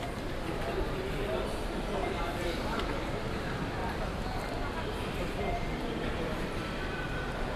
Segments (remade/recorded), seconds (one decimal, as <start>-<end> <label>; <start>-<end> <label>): 0.0-3.8 remade; 3.8-6.1 recorded; 6.1-7.6 remade